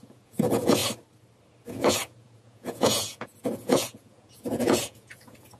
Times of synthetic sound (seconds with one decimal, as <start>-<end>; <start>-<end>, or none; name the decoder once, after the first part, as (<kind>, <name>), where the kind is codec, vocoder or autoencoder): 0.0-0.8 (vocoder, Vocos); 1.7-5.6